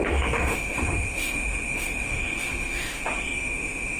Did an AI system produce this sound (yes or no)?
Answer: yes